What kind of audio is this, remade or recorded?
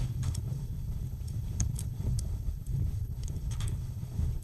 remade